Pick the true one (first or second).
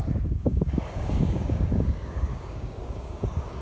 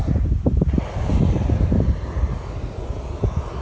second